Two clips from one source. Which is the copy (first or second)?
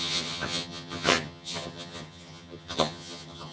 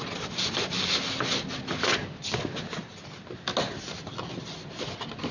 first